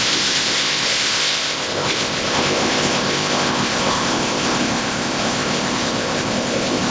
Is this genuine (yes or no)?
no